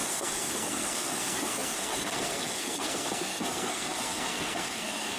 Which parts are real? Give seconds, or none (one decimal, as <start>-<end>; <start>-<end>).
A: none